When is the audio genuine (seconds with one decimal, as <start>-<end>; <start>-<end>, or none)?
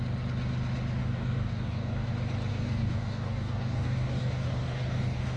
0.0-1.0; 2.1-2.5